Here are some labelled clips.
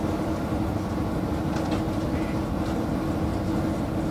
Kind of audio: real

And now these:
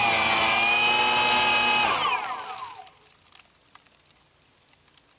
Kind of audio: real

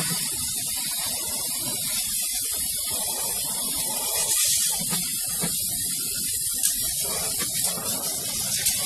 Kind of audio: real